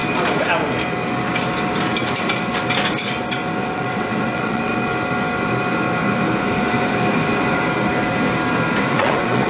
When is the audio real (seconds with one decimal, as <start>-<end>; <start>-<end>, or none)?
0.0-3.6; 4.7-8.9

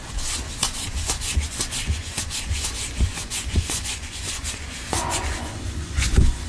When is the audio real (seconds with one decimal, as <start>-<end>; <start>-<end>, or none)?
none

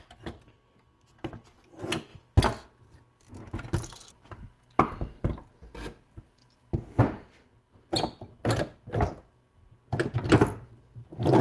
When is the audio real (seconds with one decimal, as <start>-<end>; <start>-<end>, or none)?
0.0-11.4

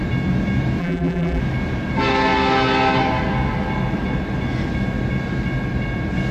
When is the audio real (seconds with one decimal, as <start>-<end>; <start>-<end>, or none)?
0.0-0.8; 1.4-6.3

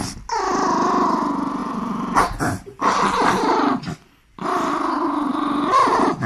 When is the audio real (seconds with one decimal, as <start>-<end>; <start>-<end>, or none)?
0.0-1.6; 4.7-6.3

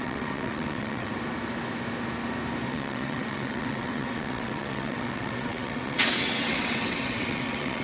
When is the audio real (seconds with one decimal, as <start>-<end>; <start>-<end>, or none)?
1.1-2.7

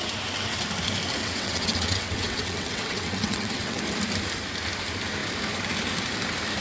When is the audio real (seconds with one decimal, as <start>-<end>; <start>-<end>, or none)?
0.0-1.2; 3.8-6.6

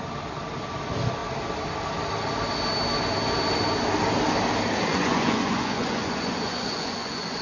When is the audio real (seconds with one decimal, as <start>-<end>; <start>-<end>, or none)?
0.0-4.9